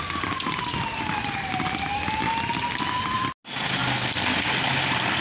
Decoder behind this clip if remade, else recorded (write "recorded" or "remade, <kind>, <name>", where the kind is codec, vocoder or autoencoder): recorded